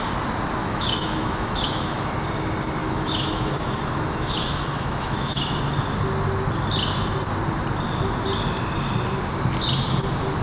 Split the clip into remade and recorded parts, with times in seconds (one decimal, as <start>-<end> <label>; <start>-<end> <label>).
0.0-0.6 recorded; 0.6-2.1 remade; 2.1-2.8 recorded; 2.8-5.6 remade; 5.6-10.4 recorded